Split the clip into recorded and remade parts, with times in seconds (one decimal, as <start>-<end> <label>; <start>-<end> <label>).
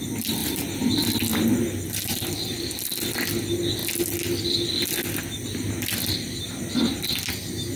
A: 0.0-0.4 recorded; 0.4-0.9 remade; 0.9-1.3 recorded; 1.3-2.3 remade; 2.3-7.8 recorded